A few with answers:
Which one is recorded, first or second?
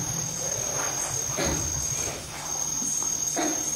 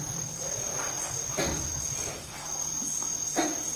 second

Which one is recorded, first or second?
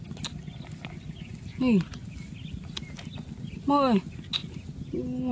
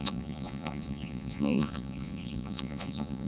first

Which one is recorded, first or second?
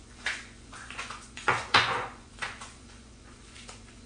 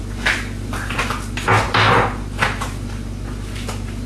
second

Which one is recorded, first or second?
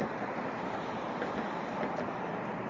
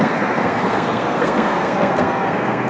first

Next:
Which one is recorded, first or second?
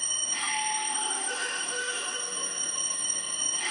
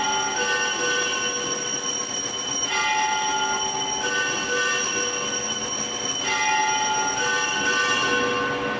second